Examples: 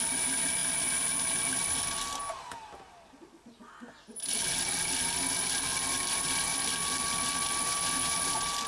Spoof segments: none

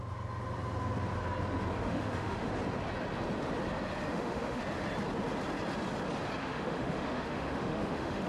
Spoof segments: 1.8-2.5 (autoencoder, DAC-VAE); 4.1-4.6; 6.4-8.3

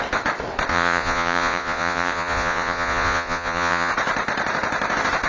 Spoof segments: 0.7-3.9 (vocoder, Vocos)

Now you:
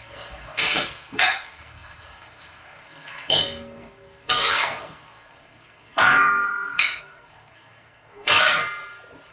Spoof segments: 0.0-8.6 (codec, SNAC)

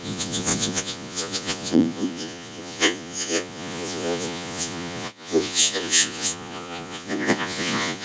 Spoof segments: 0.0-8.0 (vocoder, Vocos)

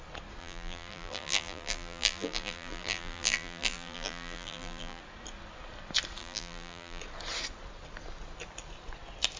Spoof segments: 0.4-5.0 (vocoder, BigVGAN v2); 6.2-7.0

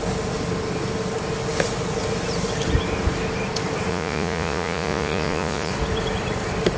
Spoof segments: 3.9-5.7 (vocoder, Vocos)